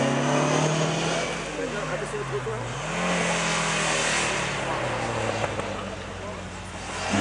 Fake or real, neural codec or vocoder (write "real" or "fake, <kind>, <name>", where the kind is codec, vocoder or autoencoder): real